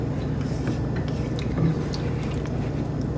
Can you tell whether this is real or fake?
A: real